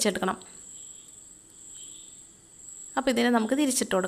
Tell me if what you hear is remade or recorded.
recorded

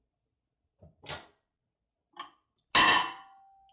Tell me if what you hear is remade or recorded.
recorded